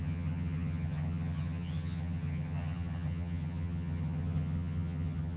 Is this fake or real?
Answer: fake